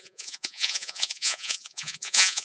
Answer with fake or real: fake